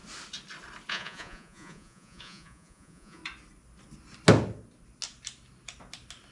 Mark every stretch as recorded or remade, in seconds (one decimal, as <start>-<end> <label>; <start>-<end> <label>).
0.0-0.9 recorded; 0.9-3.2 remade; 3.2-6.3 recorded